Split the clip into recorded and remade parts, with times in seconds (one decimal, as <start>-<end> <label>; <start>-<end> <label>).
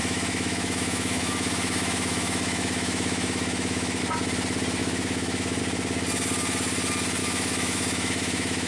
0.0-4.0 remade; 4.0-4.8 recorded; 4.8-5.6 remade; 5.6-7.2 recorded; 7.2-8.7 remade